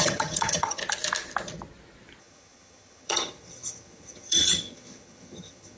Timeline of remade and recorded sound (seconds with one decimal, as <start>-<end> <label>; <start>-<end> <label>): 0.0-0.8 remade; 0.8-2.2 recorded; 2.2-5.8 remade